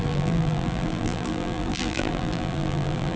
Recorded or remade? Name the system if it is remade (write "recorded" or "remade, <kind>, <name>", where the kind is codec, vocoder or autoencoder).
remade, vocoder, BigVGAN v2